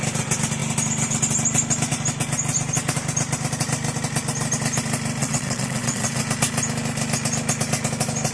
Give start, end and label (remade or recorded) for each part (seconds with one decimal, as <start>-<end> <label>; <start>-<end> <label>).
0.0-5.2 recorded; 5.2-6.2 remade; 6.2-8.3 recorded